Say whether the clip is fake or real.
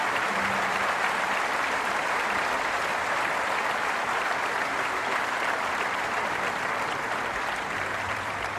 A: fake